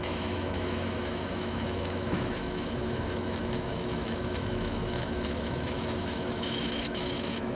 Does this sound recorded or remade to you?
remade